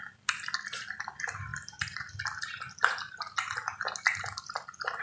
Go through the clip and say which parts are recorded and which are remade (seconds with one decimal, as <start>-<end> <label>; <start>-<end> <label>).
0.0-1.5 recorded; 1.5-2.1 remade; 2.1-5.0 recorded